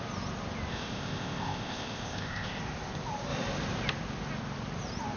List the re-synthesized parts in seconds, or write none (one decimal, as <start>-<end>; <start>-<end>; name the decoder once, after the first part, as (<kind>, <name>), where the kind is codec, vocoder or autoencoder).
0.7-2.6 (codec, ZipCodec)